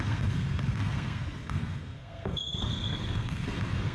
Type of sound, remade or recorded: remade